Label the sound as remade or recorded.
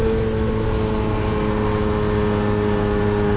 recorded